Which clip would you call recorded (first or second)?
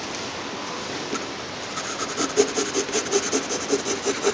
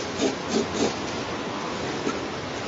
second